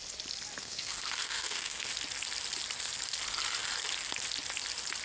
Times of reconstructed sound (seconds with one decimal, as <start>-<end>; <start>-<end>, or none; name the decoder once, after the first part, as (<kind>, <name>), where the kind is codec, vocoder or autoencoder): 0.6-1.9 (codec, SNAC)